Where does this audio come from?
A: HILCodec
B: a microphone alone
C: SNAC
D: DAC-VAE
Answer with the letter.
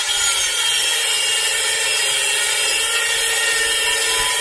B